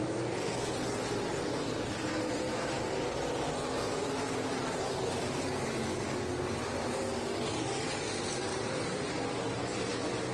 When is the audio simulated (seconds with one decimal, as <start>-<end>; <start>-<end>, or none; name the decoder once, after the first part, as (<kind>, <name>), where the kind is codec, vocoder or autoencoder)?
8.5-9.1 (vocoder, BigVGAN v2)